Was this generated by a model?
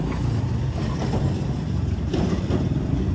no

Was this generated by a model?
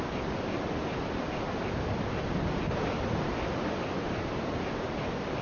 no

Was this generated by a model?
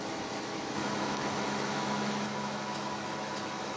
yes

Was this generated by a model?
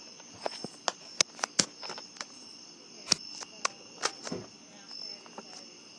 no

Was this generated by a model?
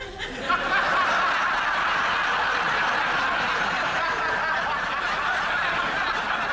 no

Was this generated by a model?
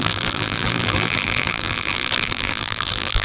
yes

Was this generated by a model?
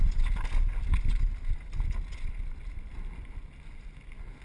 no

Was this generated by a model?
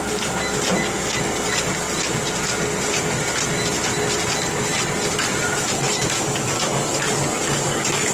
no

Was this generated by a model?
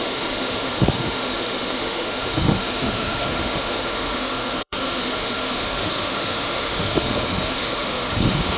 yes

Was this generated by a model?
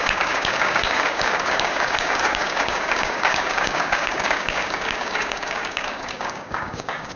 yes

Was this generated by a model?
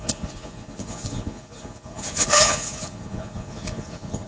yes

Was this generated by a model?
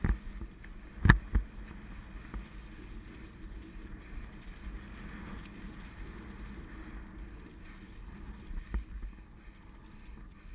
no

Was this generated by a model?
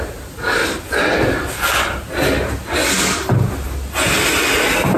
no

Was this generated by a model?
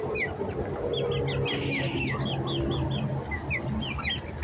no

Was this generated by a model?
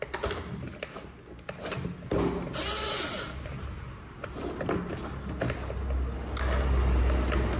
no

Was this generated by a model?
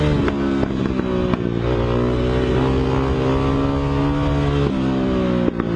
no